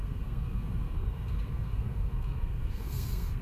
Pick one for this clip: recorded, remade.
remade